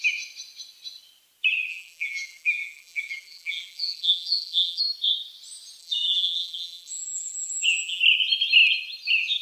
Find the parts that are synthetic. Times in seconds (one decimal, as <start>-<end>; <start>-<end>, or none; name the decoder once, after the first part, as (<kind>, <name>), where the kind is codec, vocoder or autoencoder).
1.7-4.8 (vocoder, BigVGAN v2); 5.8-8.0